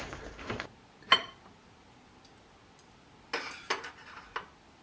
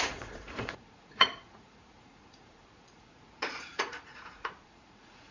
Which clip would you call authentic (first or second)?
first